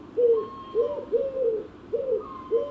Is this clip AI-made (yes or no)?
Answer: no